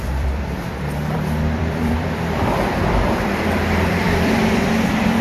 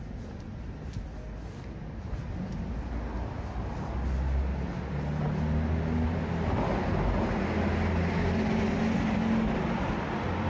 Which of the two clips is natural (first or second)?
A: second